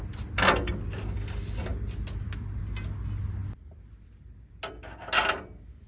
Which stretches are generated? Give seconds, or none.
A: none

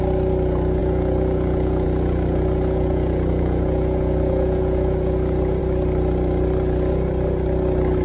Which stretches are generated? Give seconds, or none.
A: 0.8-5.6 (vocoder, Vocos)

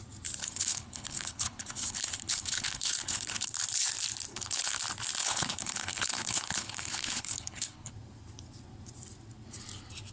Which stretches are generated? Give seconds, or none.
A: 0.4-3.5 (codec, HILCodec); 4.3-4.8; 5.2-7.9